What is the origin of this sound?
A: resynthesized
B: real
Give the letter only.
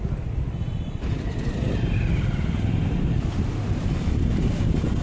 B